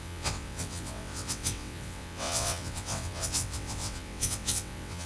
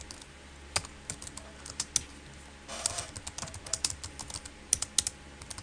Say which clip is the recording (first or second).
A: second